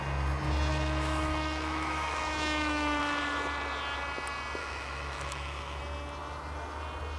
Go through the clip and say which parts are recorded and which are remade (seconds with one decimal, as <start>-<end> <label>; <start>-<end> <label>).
0.0-0.7 recorded; 0.7-3.0 remade; 3.0-4.6 recorded; 4.6-5.8 remade; 5.8-7.2 recorded